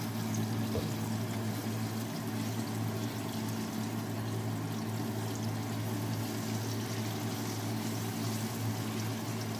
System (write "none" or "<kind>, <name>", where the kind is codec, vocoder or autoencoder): none